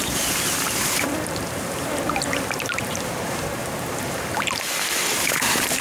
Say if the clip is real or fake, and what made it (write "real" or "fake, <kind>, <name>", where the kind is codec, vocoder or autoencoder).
fake, vocoder, BigVGAN v2